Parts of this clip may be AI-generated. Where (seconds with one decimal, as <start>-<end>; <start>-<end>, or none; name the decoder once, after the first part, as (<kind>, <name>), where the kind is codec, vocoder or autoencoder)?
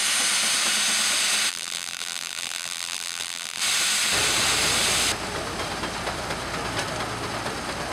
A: 1.5-3.6 (vocoder, BigVGAN v2)